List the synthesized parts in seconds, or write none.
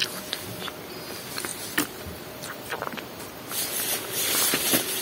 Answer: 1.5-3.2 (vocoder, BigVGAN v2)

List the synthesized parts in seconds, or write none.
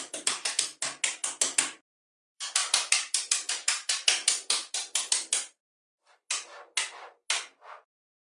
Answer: 0.0-0.7 (vocoder, BigVGAN v2); 1.9-4.8; 8.0-8.4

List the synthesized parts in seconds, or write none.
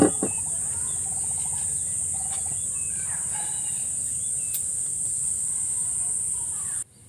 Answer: 3.1-3.8 (vocoder, BigVGAN v2)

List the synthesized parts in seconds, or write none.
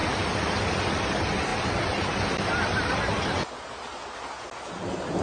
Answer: 0.0-0.6 (vocoder, BigVGAN v2); 1.5-4.0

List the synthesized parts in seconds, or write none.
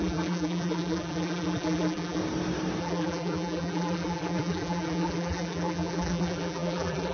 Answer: 0.0-2.2 (vocoder, BigVGAN v2); 2.8-7.1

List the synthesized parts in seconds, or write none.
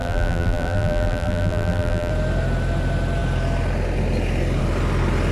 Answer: 0.0-2.1 (vocoder, BigVGAN v2)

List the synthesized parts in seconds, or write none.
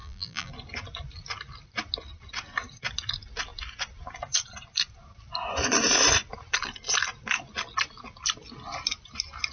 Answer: 0.0-0.5 (vocoder, BigVGAN v2)